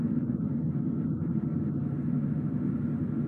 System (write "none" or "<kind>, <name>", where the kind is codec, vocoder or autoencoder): none